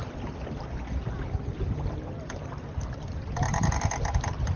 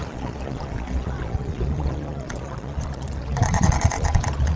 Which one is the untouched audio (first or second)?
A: first